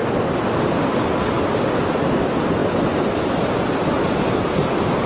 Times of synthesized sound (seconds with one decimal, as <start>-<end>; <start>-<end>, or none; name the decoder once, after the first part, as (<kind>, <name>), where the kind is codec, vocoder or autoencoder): none